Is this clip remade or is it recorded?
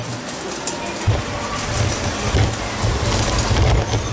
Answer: recorded